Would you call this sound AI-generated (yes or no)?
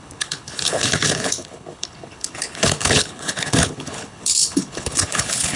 yes